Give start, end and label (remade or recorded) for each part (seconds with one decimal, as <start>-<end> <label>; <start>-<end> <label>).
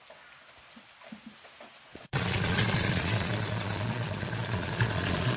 0.0-1.9 recorded; 1.9-5.4 remade